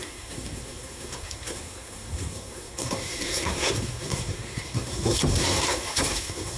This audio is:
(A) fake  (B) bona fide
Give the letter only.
A